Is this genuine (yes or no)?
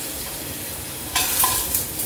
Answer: no